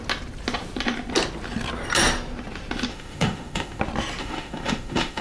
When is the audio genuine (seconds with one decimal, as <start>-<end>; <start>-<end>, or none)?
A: 0.0-2.9; 3.8-4.2